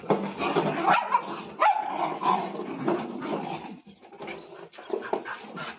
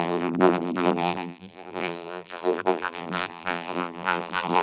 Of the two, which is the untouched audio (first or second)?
first